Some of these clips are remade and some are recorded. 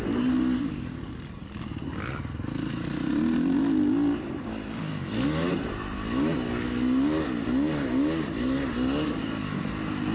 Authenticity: recorded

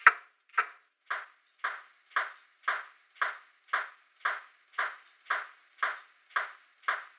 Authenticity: recorded